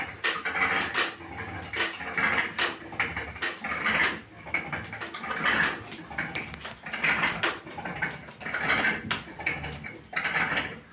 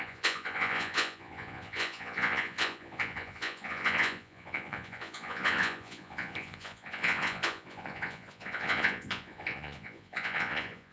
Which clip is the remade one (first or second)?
second